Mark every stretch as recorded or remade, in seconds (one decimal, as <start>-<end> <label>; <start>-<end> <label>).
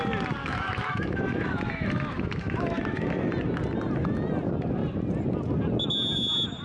0.0-0.4 recorded; 0.4-3.3 remade; 3.3-6.6 recorded